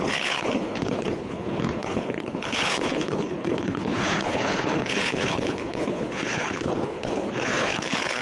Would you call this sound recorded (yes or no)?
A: no